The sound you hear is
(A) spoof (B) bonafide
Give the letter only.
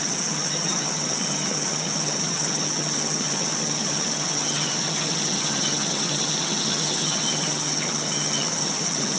A